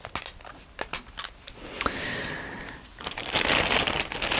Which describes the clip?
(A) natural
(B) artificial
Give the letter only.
A